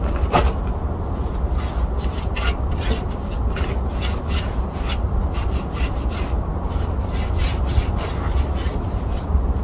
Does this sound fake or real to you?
real